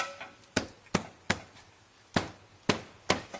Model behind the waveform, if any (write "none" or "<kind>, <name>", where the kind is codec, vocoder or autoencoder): none